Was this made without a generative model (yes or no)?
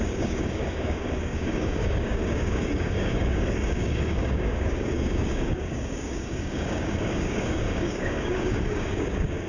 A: no